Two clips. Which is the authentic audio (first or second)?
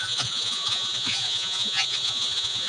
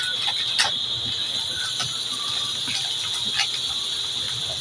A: second